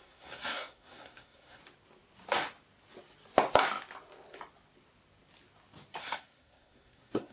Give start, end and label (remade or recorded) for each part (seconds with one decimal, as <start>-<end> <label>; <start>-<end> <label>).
0.0-1.6 remade; 1.6-6.0 recorded; 6.0-7.3 remade